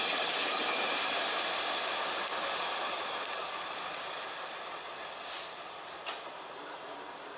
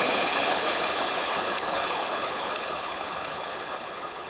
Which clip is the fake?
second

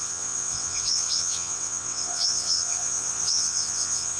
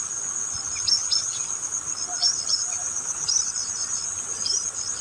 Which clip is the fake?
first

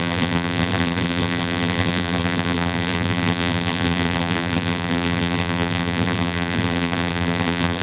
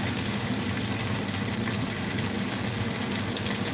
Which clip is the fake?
first